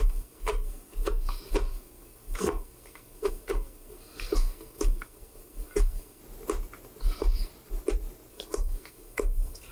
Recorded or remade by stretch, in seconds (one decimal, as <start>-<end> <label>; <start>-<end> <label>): 0.0-6.2 remade; 6.2-7.0 recorded; 7.0-7.5 remade; 7.5-8.3 recorded; 8.3-9.7 remade